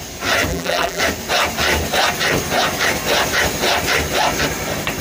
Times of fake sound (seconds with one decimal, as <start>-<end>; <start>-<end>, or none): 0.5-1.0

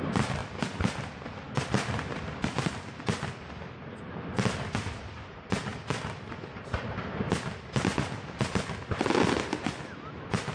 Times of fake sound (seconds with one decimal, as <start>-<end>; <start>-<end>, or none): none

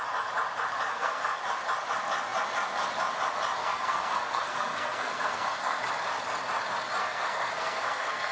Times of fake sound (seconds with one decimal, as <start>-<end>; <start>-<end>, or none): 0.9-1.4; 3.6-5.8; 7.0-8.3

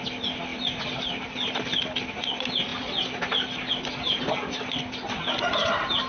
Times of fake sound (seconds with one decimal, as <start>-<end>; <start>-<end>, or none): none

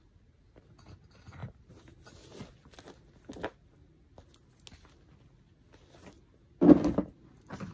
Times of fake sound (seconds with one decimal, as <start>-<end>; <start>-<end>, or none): none

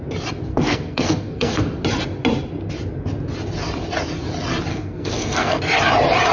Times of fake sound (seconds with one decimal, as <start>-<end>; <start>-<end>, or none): 0.5-1.6; 4.7-5.6